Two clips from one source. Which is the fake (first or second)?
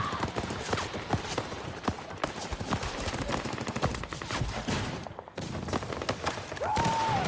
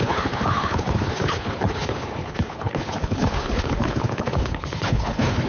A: second